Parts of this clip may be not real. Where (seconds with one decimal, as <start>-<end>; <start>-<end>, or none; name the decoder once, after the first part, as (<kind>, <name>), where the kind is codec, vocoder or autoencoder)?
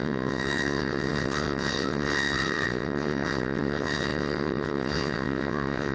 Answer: 0.0-5.9 (vocoder, WaveNeXt)